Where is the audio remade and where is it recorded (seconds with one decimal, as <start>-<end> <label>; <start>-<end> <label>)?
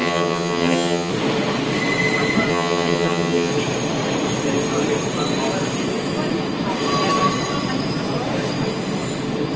0.0-1.1 remade; 1.1-2.5 recorded; 2.5-3.5 remade; 3.5-9.6 recorded